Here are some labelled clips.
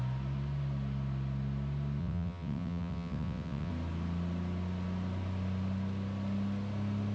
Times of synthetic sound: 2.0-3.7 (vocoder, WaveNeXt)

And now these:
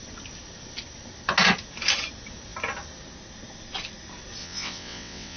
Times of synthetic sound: 4.4-5.4 (vocoder, WaveNeXt)

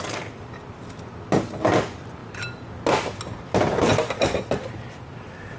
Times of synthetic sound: none

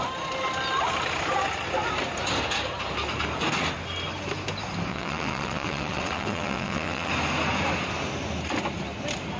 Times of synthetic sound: 4.9-7.1 (vocoder, WaveNeXt)